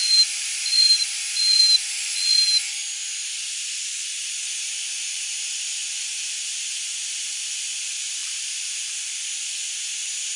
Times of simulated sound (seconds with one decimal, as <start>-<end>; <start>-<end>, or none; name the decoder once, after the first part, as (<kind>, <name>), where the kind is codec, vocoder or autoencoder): 0.0-1.9 (vocoder, BigVGAN v2); 8.2-8.9